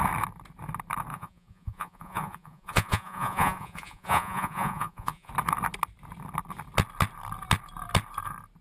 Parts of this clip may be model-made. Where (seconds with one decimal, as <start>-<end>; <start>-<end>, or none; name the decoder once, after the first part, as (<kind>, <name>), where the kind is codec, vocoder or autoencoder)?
1.1-5.3 (vocoder, Vocos)